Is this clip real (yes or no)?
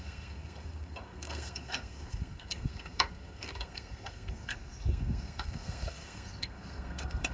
no